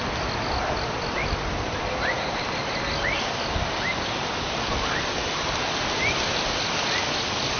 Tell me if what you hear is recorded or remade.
recorded